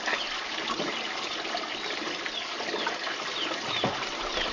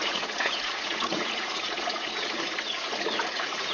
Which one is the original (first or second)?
first